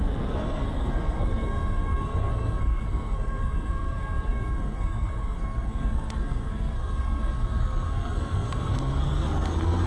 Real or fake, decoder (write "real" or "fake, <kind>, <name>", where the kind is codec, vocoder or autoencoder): fake, codec, SNAC